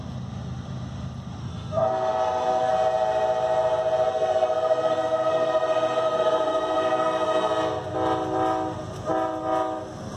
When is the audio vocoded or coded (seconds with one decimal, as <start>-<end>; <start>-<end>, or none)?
1.4-2.7; 4.1-7.5